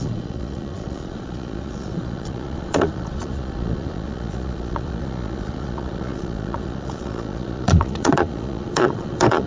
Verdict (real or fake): fake